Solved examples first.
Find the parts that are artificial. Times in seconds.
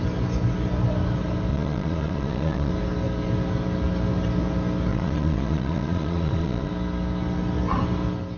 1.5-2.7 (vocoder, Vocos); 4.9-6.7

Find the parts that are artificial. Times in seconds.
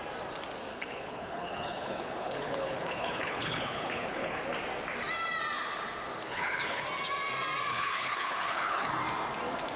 0.7-4.4 (codec, HILCodec); 6.2-6.8; 7.7-8.9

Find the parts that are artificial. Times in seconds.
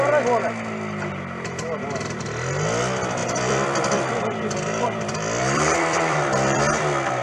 3.2-6.6 (vocoder, BigVGAN v2)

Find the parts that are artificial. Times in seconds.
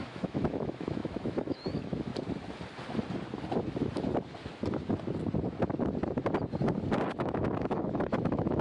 0.0-2.1 (autoencoder, DAC-VAE); 7.1-8.6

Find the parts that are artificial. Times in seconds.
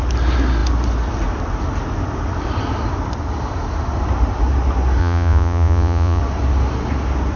5.0-6.2 (vocoder, Vocos)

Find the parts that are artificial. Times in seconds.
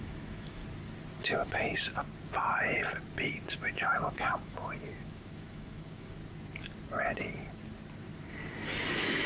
0.0-0.6 (autoencoder, DAC-VAE); 3.5-6.2; 8.9-9.3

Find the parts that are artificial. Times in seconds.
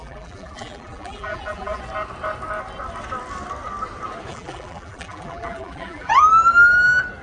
0.0-1.8 (vocoder, BigVGAN v2); 4.3-6.1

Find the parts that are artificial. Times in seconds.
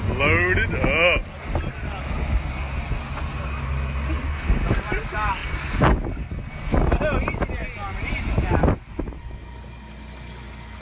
none